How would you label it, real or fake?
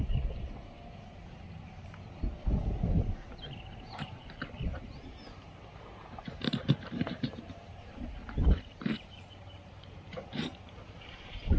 fake